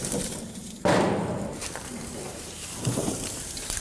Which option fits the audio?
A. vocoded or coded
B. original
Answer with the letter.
A